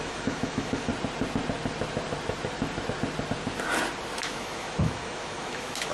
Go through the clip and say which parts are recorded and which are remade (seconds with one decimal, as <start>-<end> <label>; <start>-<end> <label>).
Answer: 0.0-0.9 remade; 0.9-4.2 recorded; 4.2-5.9 remade